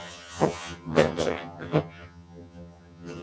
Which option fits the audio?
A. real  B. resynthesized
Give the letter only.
B